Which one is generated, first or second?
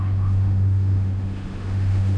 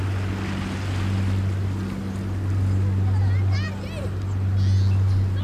first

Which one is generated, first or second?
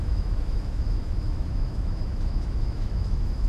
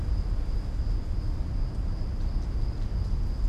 first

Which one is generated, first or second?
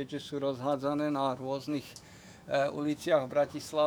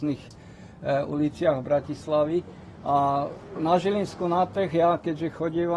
first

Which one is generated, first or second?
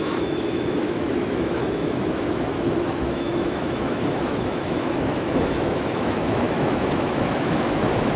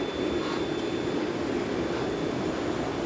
first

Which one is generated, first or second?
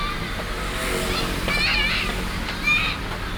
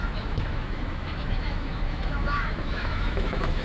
second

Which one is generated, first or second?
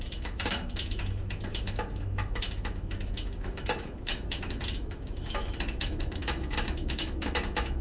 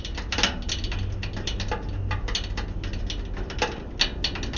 first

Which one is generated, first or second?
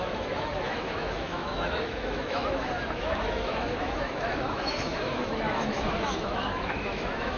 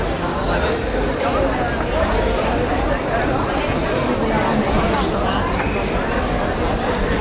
first